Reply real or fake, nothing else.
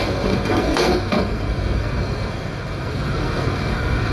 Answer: fake